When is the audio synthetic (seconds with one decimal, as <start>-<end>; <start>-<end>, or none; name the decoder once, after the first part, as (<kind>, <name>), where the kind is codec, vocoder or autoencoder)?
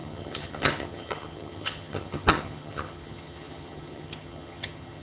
0.0-5.0 (vocoder, HiFi-GAN)